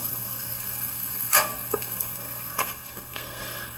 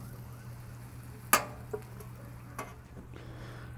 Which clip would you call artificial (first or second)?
first